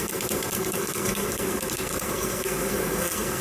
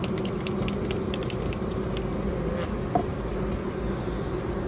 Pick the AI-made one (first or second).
first